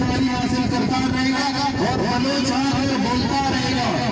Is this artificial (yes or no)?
no